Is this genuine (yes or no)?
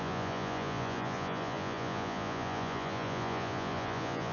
no